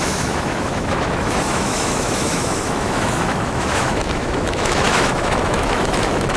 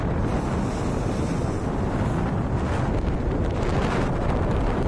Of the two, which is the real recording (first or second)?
second